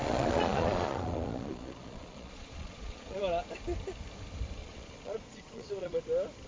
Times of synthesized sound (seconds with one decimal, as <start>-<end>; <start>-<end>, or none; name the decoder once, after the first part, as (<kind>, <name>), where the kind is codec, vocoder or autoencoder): 0.0-3.2 (vocoder, Vocos); 4.6-6.0